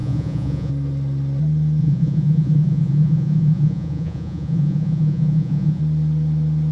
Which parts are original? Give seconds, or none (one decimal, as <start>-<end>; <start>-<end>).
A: 0.7-1.8; 5.8-6.7